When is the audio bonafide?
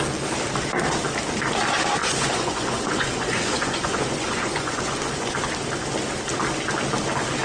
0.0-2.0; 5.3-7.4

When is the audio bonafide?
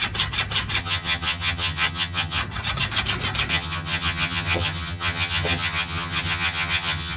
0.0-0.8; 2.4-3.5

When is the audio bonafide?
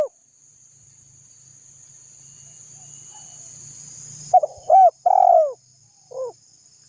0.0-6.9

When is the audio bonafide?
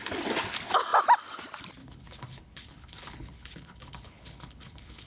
0.0-1.8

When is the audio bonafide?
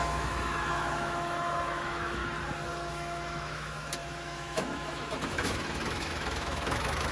2.2-2.9